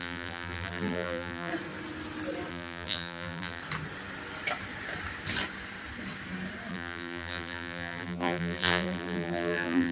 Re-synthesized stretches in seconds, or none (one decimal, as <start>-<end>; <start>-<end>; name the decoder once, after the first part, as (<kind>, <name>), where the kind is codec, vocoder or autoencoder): 0.0-1.5 (vocoder, BigVGAN v2); 2.5-3.6; 6.7-9.9